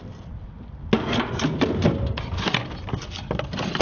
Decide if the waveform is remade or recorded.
recorded